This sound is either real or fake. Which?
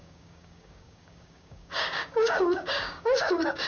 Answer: fake